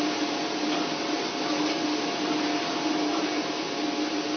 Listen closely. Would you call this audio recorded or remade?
recorded